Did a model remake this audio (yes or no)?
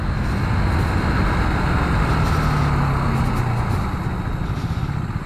no